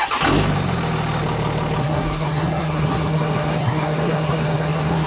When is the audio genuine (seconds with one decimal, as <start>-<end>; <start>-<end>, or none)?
0.0-1.8